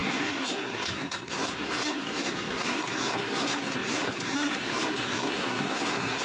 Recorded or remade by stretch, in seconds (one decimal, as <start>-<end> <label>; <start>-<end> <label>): 0.0-6.2 remade